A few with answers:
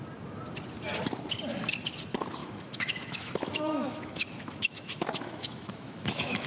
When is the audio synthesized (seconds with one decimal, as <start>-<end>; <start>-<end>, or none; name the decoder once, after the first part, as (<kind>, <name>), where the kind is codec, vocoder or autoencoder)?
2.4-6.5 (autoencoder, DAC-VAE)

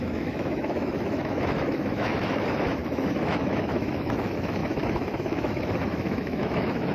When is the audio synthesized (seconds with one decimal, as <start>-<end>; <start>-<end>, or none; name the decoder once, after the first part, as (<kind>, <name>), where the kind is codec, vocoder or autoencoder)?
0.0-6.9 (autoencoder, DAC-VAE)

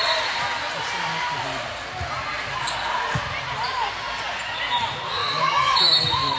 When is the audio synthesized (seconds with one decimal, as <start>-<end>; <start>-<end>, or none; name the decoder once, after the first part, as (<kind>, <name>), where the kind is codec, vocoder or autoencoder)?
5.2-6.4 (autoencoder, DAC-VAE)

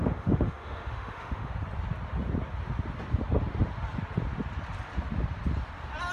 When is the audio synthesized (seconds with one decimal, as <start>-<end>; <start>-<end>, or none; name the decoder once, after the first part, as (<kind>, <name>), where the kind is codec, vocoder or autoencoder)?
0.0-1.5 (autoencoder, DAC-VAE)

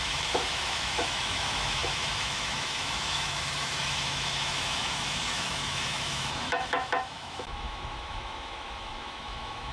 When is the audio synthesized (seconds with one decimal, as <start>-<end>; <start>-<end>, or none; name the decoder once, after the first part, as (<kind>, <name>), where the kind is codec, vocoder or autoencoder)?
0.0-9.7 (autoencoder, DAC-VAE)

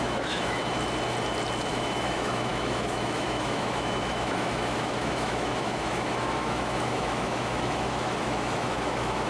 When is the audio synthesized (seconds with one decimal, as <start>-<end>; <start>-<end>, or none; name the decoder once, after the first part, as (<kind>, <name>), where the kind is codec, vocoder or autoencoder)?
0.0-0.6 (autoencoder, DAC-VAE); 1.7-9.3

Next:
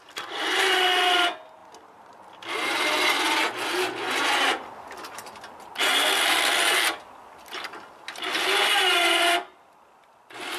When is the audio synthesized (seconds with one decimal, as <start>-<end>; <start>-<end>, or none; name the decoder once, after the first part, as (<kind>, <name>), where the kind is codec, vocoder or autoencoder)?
none

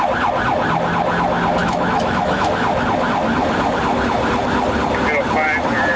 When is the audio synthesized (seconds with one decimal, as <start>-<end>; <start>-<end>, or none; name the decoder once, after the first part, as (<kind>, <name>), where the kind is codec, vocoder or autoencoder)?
1.6-2.5 (autoencoder, DAC-VAE)